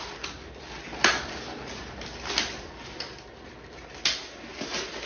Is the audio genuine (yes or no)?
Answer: yes